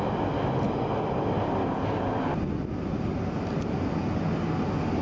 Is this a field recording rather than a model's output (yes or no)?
yes